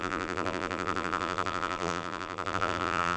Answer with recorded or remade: remade